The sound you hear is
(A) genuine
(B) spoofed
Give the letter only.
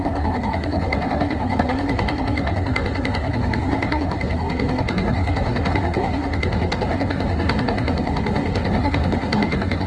B